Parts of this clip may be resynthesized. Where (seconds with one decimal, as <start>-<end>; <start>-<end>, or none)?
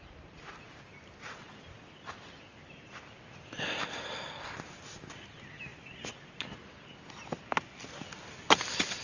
none